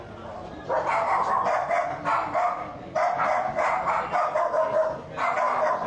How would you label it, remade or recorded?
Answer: recorded